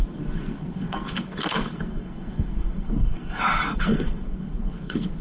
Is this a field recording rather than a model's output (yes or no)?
no